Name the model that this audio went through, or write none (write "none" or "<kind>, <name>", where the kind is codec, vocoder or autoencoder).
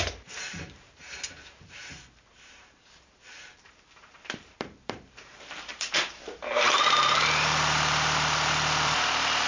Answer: vocoder, BigVGAN v2